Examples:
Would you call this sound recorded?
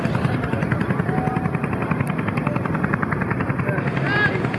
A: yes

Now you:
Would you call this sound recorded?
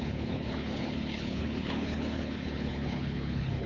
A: no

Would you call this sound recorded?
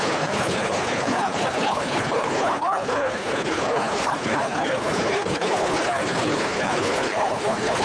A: no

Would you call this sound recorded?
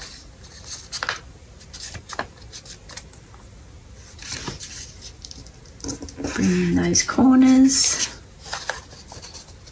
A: yes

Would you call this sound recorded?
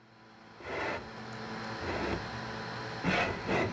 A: yes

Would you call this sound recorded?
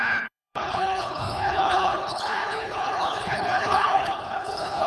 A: no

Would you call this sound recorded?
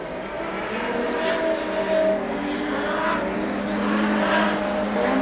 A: yes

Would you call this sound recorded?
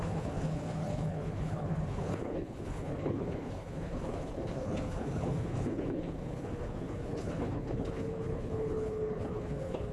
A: no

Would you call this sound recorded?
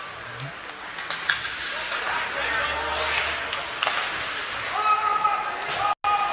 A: yes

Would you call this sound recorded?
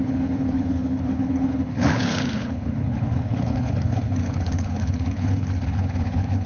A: no